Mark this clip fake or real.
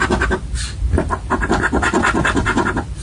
real